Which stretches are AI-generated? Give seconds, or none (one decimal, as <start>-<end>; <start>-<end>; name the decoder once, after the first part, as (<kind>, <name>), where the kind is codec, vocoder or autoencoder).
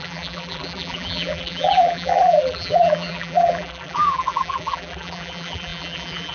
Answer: 0.0-6.3 (vocoder, BigVGAN v2)